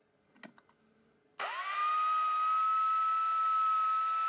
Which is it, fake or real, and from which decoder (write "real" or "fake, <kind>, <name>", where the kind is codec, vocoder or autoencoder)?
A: real